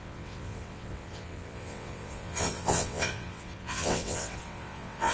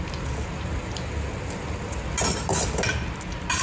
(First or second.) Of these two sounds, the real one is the second